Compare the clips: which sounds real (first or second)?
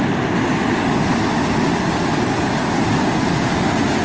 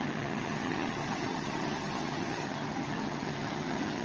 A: first